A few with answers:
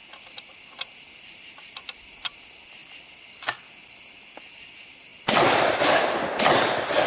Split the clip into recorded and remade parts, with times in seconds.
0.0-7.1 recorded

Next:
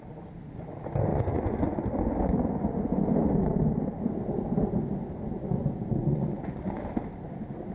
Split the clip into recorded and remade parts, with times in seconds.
0.0-1.1 recorded; 1.1-1.8 remade; 1.8-6.0 recorded; 6.0-6.8 remade; 6.8-7.7 recorded